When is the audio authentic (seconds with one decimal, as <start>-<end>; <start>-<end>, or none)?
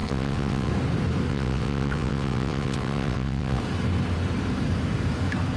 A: 0.7-1.3; 3.6-5.6